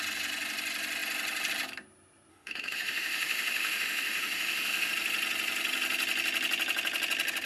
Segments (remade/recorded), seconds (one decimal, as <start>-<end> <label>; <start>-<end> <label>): 0.0-2.3 recorded; 2.3-4.9 remade; 4.9-7.4 recorded